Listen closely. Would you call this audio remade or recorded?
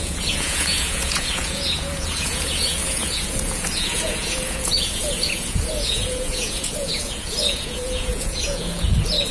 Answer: remade